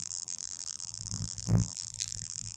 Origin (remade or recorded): remade